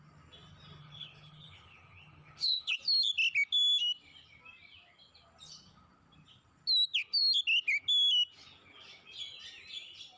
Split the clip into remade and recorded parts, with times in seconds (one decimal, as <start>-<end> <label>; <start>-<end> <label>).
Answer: 0.0-0.8 recorded; 0.8-2.8 remade; 2.8-10.2 recorded